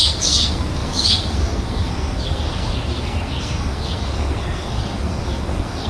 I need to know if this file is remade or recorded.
remade